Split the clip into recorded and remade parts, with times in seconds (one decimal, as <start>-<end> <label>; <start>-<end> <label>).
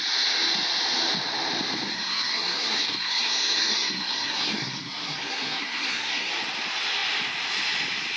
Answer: 0.0-1.9 recorded; 1.9-6.3 remade; 6.3-8.2 recorded